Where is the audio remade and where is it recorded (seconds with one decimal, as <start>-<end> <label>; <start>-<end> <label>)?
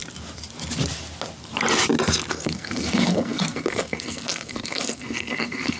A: 0.0-2.3 recorded; 2.3-5.8 remade